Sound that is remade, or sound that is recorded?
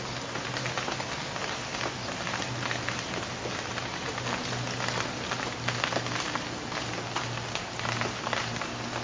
recorded